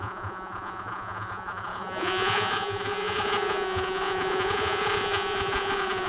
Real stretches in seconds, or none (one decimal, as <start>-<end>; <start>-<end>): none